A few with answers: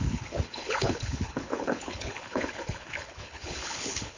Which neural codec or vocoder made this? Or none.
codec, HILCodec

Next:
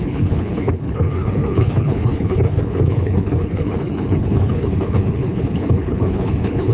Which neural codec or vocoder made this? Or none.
codec, HILCodec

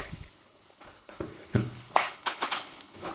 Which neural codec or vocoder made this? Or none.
codec, HILCodec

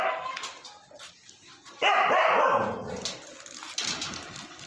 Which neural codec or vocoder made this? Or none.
none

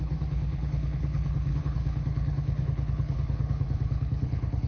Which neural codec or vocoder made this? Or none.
codec, HILCodec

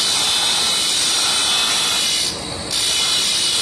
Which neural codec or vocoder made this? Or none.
none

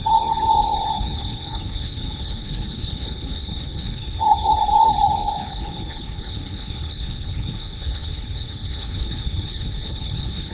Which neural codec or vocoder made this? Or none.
codec, HILCodec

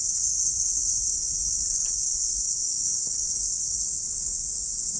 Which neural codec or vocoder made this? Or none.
codec, HILCodec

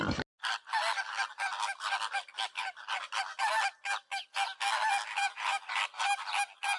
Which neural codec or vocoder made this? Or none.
none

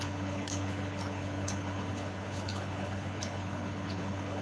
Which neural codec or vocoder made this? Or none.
codec, HILCodec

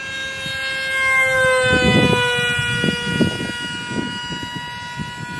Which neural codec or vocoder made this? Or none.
none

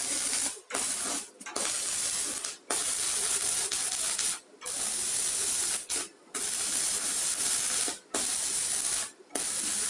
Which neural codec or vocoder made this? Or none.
none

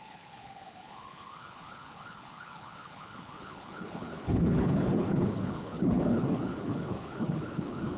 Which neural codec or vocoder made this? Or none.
codec, HILCodec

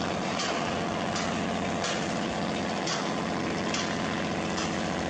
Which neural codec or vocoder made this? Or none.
none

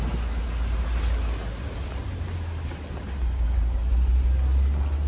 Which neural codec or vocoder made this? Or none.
none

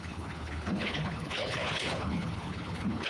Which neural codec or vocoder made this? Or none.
codec, HILCodec